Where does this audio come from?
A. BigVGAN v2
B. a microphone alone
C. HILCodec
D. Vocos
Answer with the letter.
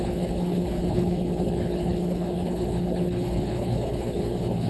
C